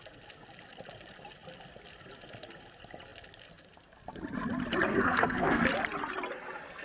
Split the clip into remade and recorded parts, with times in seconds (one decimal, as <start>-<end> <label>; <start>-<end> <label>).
0.0-4.9 recorded; 4.9-5.6 remade; 5.6-6.8 recorded

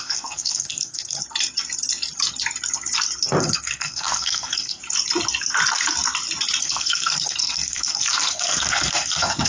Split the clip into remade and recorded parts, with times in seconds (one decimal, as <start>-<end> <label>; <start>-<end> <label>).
0.0-1.2 remade; 1.2-3.4 recorded; 3.4-4.8 remade; 4.8-6.6 recorded; 6.6-9.5 remade

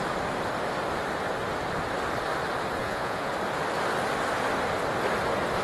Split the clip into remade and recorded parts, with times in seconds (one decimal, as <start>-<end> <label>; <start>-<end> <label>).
0.0-2.8 recorded; 2.8-3.3 remade; 3.3-5.6 recorded

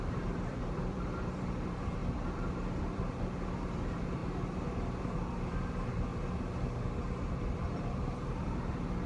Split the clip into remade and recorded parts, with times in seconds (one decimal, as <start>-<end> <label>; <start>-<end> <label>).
0.0-2.0 remade; 2.0-2.8 recorded; 2.8-6.1 remade; 6.1-7.4 recorded; 7.4-9.1 remade

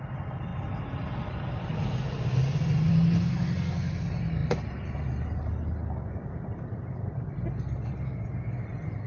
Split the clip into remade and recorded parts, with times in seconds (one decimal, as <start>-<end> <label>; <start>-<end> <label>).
0.0-9.1 recorded

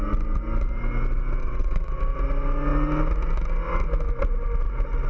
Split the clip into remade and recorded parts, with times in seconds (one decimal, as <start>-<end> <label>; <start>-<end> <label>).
0.0-1.4 recorded; 1.4-2.0 remade; 2.0-5.1 recorded

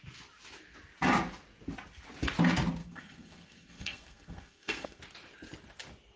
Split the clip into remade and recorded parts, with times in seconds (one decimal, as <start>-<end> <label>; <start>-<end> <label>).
0.0-2.8 recorded; 2.8-5.0 remade; 5.0-6.2 recorded